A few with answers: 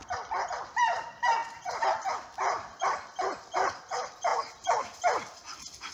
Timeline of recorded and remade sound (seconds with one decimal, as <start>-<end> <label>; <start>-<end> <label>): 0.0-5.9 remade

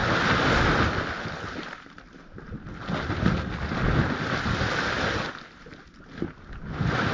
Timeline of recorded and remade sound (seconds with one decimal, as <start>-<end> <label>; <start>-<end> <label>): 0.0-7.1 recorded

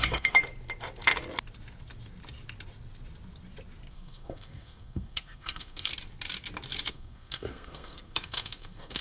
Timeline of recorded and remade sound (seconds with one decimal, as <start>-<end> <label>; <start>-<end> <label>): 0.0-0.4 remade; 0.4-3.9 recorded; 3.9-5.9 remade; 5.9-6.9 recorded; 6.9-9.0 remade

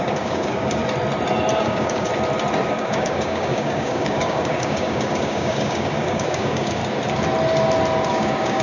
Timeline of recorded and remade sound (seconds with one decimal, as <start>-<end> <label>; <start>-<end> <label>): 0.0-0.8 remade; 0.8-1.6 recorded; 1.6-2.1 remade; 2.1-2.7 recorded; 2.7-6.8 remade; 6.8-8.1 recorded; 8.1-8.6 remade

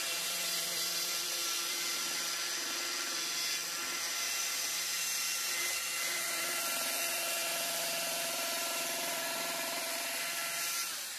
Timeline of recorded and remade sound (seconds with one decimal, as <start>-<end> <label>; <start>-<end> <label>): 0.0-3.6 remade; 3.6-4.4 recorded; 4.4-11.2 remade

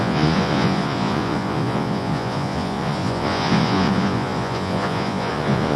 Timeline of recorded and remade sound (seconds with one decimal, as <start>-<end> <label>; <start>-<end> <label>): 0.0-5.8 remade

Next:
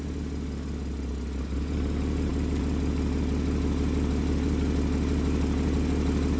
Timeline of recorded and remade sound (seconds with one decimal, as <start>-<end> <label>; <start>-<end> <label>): 0.0-6.4 recorded

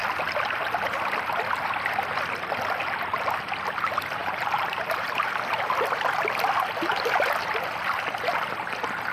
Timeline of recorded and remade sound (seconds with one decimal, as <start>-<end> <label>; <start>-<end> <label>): 0.0-4.2 recorded; 4.2-5.5 remade; 5.5-6.9 recorded; 6.9-7.5 remade; 7.5-9.1 recorded